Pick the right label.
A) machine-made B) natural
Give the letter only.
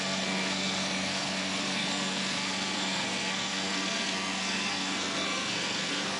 A